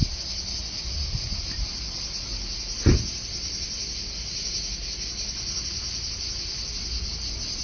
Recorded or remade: recorded